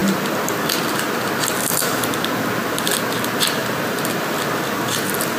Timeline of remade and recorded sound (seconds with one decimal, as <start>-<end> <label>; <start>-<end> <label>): 0.0-5.4 recorded